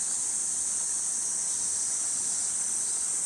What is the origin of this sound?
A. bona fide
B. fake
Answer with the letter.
A